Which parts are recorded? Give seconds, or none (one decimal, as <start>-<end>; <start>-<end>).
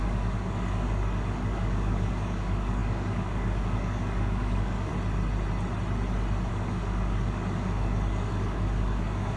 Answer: 4.9-6.5